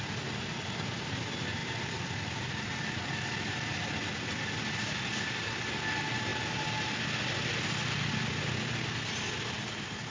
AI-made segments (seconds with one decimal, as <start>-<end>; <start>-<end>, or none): 1.6-2.2